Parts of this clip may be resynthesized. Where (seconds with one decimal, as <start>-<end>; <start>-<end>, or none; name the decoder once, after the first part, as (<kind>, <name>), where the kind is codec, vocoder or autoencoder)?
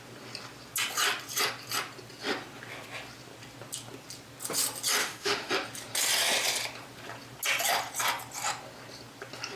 5.0-5.5 (autoencoder, DAC-VAE)